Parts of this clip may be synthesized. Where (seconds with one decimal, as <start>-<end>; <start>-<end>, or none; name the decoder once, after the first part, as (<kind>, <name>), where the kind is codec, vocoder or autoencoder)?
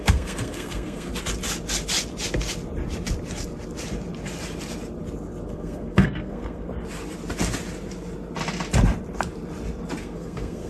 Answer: 0.0-1.1 (codec, SNAC); 5.5-6.7; 10.0-10.7